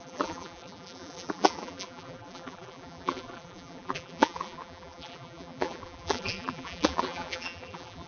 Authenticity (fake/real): fake